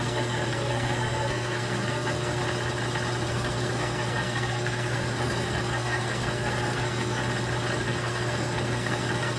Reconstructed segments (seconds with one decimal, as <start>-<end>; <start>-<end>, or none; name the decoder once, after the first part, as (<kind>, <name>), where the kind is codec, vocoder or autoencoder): 0.0-2.4 (codec, SNAC); 3.3-7.2; 7.8-9.4